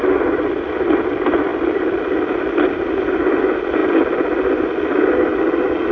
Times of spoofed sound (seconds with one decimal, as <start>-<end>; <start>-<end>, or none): 1.5-2.9

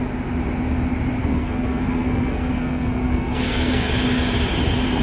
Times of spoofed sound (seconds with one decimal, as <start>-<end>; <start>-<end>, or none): 1.3-3.9

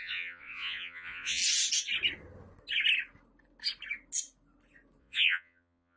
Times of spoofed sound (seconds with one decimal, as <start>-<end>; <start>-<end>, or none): 0.0-1.4; 5.0-6.0